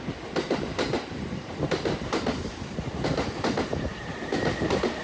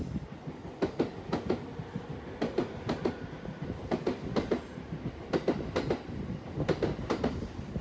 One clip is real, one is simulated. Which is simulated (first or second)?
first